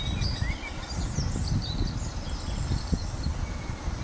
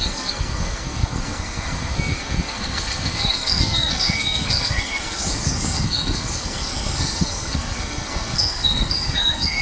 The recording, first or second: first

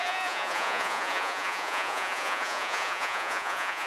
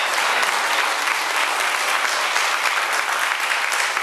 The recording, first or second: second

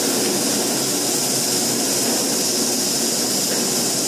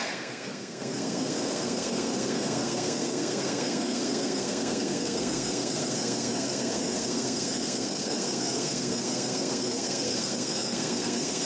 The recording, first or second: first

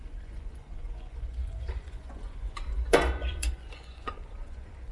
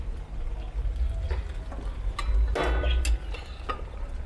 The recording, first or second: second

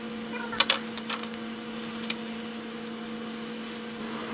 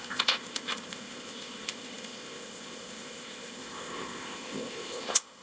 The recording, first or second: first